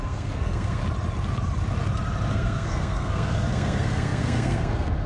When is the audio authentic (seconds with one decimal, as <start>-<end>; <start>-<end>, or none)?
0.8-2.3